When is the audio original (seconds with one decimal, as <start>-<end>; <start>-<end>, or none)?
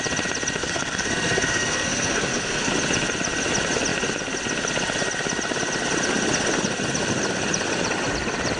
0.0-0.6; 2.7-8.6